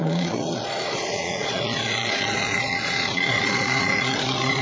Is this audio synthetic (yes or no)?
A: yes